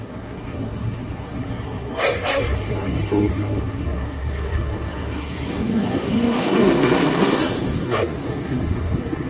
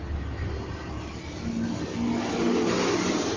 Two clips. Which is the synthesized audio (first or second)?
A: first